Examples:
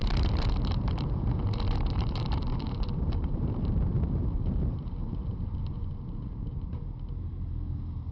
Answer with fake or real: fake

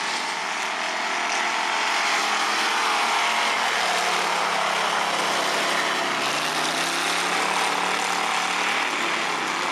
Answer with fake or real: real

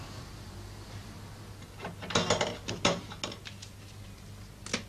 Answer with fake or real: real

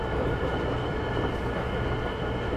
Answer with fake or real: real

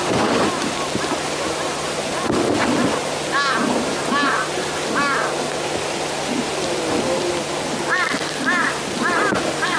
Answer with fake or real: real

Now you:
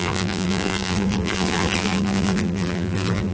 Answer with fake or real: fake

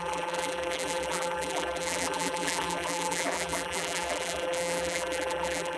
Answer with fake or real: fake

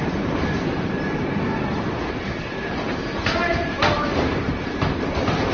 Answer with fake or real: fake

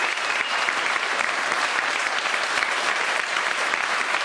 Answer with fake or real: fake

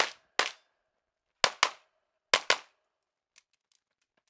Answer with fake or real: real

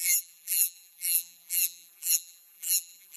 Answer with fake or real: fake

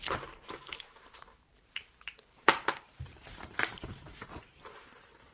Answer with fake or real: fake